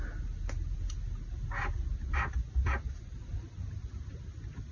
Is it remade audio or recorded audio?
recorded